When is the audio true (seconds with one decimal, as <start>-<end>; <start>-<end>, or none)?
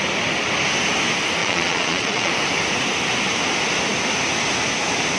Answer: 0.0-1.4; 2.3-5.2